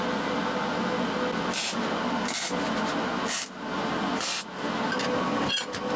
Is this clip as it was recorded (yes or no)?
yes